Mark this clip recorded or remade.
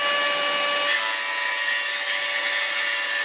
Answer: recorded